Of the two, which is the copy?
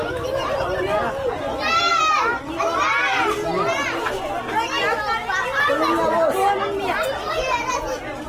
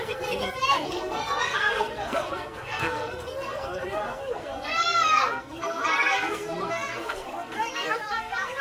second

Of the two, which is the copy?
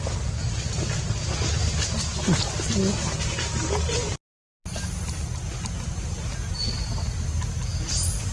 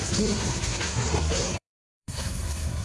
second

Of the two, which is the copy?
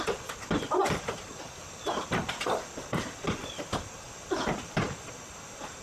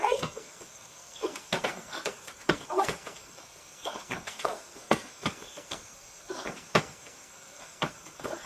second